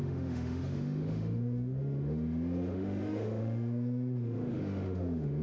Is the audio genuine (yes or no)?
no